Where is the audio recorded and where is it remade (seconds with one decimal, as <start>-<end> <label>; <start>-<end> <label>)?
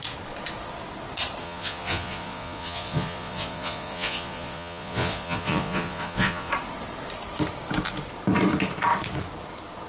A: 0.0-1.4 recorded; 1.4-6.5 remade; 6.5-9.9 recorded